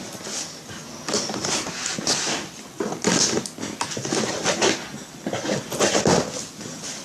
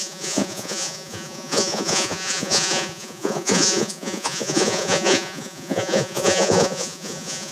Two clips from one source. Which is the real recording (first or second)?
first